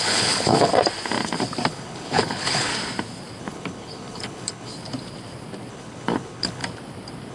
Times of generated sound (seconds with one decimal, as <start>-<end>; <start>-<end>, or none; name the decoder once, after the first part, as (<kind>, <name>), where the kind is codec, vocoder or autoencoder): 0.0-0.7 (codec, HILCodec); 1.7-2.7; 3.4-4.7; 5.7-6.6